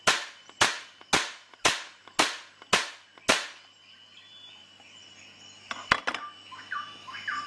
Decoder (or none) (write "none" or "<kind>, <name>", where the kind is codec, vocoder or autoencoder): none